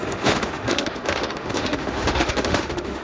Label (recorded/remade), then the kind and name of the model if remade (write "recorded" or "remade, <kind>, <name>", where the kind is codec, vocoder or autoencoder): remade, autoencoder, DAC-VAE